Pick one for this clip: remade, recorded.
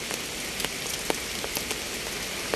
recorded